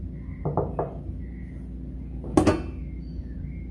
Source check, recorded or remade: recorded